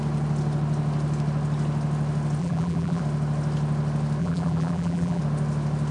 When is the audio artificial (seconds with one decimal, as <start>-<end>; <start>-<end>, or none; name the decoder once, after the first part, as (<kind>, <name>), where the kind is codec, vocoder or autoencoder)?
2.4-3.0 (vocoder, BigVGAN v2); 4.2-5.2

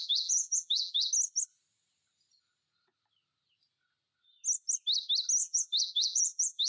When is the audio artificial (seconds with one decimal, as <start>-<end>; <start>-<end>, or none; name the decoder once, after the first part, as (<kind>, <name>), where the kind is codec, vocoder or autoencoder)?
0.0-1.1 (vocoder, BigVGAN v2); 5.4-6.7

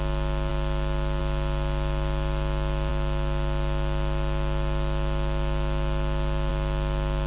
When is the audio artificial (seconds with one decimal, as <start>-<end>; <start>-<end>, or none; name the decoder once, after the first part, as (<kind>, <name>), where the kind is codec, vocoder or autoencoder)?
none